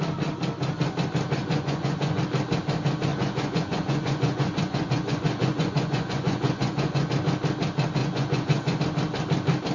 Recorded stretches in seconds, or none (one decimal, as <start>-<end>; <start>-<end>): 0.0-1.4; 2.2-3.1; 7.1-8.0; 8.8-9.7